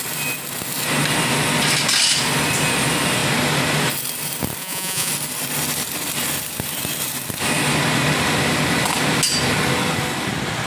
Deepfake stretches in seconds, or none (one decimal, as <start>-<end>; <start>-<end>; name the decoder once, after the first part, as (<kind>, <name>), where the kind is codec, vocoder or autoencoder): 4.6-5.1 (vocoder, Vocos)